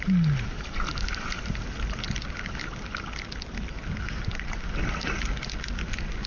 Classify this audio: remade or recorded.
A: recorded